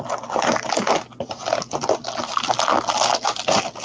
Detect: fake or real real